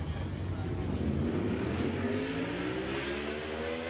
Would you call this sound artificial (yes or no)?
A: no